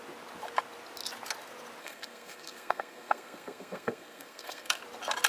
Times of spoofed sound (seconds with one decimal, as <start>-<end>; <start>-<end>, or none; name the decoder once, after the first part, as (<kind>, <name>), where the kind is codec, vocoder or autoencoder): 1.8-4.8 (codec, SNAC)